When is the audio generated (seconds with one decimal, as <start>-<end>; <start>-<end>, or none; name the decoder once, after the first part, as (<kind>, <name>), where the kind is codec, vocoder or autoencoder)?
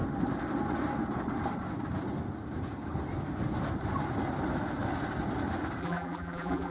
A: 5.8-6.7 (vocoder, BigVGAN v2)